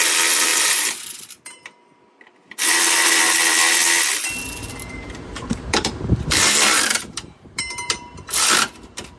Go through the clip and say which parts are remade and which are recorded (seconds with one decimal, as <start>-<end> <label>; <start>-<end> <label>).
0.0-0.5 recorded; 0.5-1.2 remade; 1.2-4.6 recorded; 4.6-7.6 remade; 7.6-9.2 recorded